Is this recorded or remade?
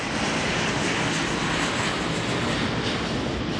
recorded